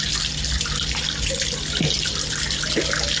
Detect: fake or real real